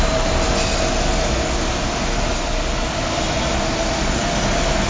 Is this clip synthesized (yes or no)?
no